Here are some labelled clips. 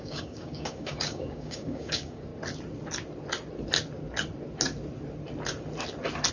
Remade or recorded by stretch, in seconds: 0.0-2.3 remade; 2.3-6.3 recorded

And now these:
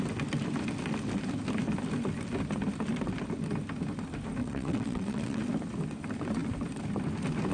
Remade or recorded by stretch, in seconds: 0.0-4.4 recorded; 4.4-5.4 remade; 5.4-7.5 recorded

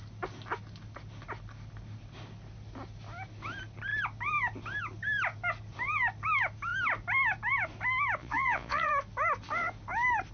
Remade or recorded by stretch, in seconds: 0.0-8.2 recorded; 8.2-8.9 remade; 8.9-10.3 recorded

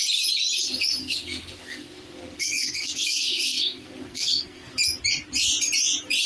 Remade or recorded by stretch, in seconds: 0.0-1.0 recorded; 1.0-4.8 remade; 4.8-6.3 recorded

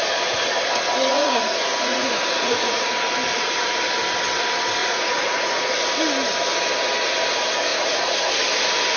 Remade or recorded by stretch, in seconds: 0.0-1.1 recorded; 1.1-2.9 remade; 2.9-4.8 recorded; 4.8-5.7 remade; 5.7-7.7 recorded; 7.7-8.3 remade; 8.3-9.0 recorded

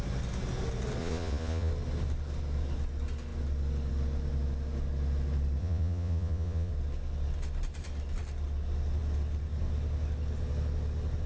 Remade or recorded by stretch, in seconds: 0.0-1.0 recorded; 1.0-1.7 remade; 1.7-5.6 recorded; 5.6-6.7 remade; 6.7-11.3 recorded